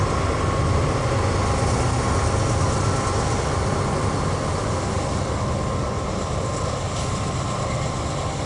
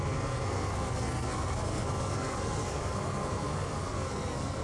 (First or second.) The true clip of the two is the first